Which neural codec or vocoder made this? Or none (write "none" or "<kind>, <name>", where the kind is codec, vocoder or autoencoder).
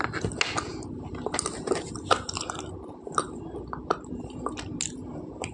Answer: none